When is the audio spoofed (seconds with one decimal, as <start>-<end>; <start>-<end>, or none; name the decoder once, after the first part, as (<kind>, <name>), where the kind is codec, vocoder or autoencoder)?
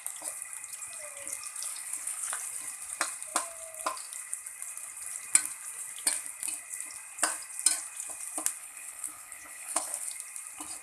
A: 1.7-2.3 (codec, HILCodec); 8.6-10.1